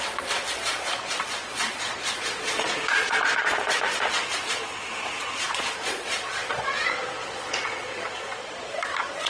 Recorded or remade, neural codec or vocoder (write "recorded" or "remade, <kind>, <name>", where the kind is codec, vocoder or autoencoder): remade, vocoder, Vocos